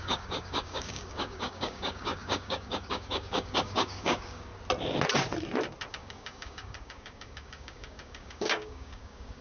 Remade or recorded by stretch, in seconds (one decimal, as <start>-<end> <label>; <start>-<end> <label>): 0.0-4.5 remade; 4.5-5.9 recorded; 5.9-9.4 remade